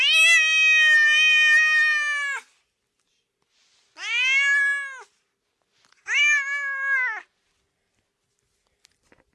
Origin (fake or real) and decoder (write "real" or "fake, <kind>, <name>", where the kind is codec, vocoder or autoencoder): real